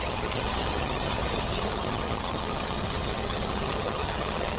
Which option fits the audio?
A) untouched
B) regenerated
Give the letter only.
B